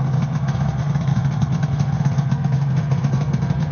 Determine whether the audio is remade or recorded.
remade